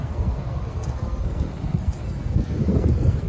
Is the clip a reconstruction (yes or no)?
yes